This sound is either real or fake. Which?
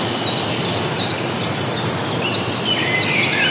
real